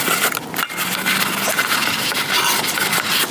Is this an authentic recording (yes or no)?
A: yes